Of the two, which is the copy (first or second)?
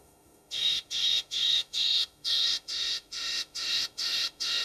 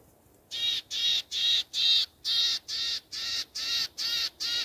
first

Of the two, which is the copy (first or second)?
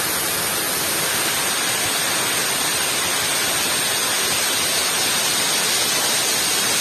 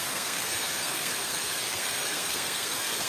second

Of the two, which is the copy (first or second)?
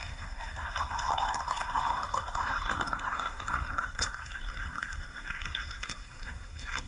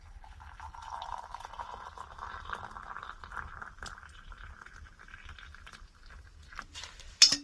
first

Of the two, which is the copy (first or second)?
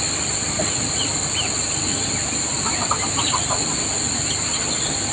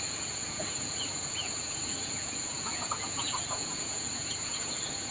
second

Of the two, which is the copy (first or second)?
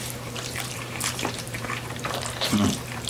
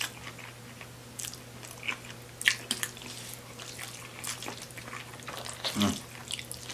first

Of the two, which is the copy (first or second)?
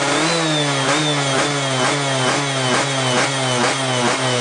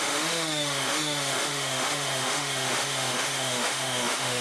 second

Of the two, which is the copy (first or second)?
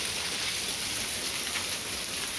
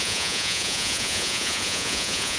second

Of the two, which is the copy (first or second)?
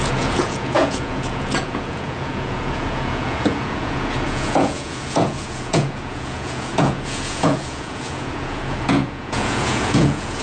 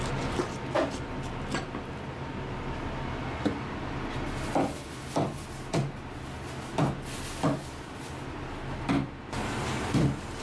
first